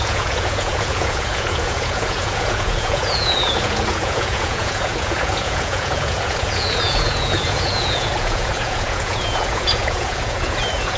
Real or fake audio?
fake